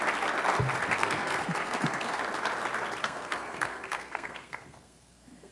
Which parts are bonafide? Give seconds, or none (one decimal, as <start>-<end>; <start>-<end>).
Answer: 0.0-1.0; 2.2-3.0